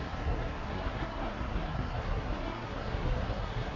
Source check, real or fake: fake